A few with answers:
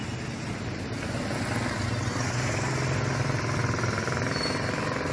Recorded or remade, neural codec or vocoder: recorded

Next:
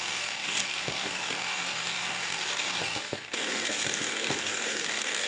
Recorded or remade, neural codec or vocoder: remade, codec, DAC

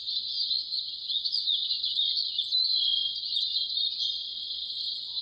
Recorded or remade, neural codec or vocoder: remade, vocoder, Vocos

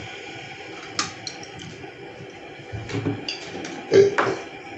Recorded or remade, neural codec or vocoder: recorded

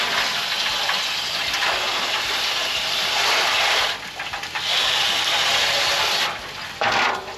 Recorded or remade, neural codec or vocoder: recorded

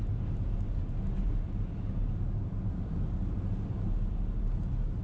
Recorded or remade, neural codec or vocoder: recorded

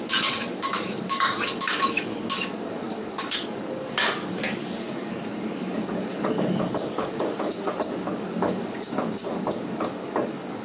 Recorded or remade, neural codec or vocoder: remade, codec, DAC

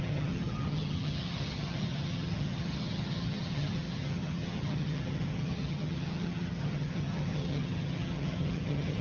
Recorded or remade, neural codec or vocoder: remade, vocoder, HiFi-GAN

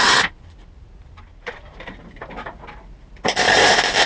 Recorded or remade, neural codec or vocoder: recorded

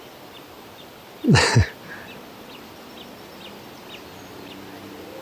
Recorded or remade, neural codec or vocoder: recorded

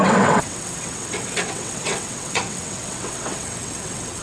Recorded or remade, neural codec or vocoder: remade, vocoder, WaveNeXt